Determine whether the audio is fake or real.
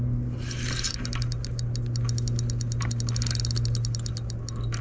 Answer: real